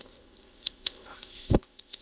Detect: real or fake fake